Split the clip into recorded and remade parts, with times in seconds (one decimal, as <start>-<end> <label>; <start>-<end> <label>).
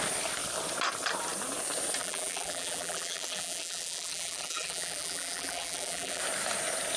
0.0-2.0 recorded; 2.0-6.2 remade; 6.2-7.0 recorded